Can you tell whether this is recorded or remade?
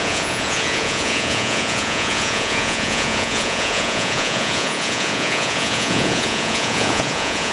remade